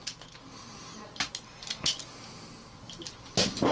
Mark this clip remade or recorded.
recorded